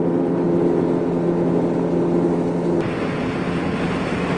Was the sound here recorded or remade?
recorded